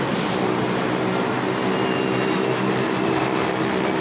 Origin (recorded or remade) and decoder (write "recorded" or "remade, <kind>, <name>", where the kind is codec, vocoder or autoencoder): recorded